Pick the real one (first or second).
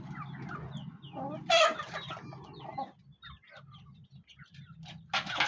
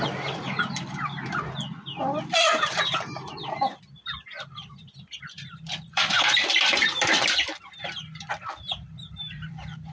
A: first